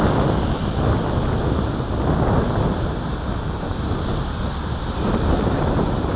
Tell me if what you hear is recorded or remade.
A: recorded